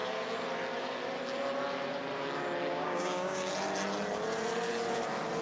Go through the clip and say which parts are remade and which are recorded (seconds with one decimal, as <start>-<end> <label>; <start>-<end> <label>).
0.0-2.7 recorded; 2.7-3.5 remade; 3.5-5.4 recorded